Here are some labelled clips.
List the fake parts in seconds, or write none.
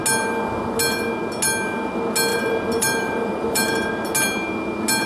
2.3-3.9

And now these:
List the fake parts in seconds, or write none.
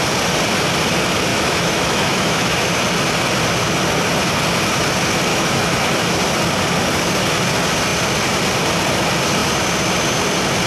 1.3-2.6; 5.3-6.2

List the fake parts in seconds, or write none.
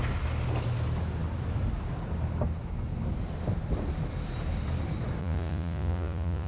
5.2-6.5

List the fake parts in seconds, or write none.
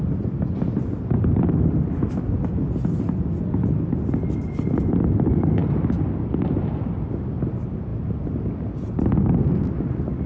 none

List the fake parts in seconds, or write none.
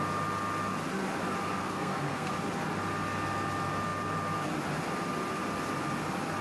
1.6-2.3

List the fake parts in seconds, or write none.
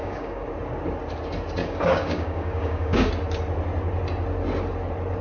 0.0-0.5; 1.6-3.1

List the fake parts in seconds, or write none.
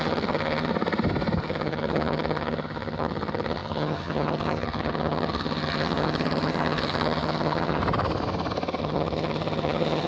0.0-0.7; 1.4-7.8; 8.8-10.1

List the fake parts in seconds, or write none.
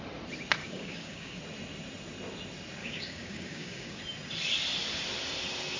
0.6-1.4; 2.8-4.0